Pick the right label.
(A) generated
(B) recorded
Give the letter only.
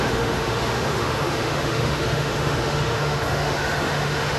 A